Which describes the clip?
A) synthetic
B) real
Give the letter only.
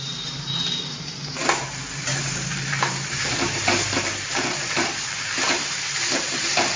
A